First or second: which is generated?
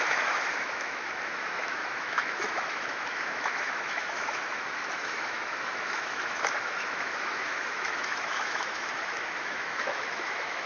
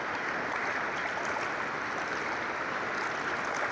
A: first